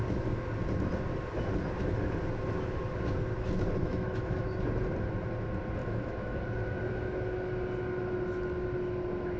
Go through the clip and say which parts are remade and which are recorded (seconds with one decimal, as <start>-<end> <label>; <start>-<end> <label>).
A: 0.0-3.8 recorded; 3.8-4.6 remade; 4.6-5.8 recorded; 5.8-6.4 remade; 6.4-9.4 recorded